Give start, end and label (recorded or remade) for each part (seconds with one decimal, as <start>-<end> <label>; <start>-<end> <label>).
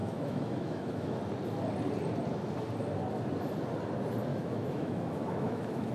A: 0.0-1.2 remade; 1.2-4.3 recorded; 4.3-5.9 remade